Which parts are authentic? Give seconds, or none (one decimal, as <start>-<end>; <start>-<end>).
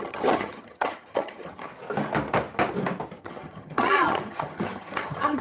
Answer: 1.7-3.2